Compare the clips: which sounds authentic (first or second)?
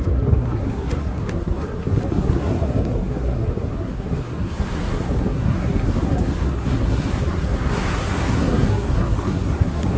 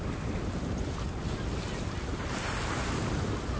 second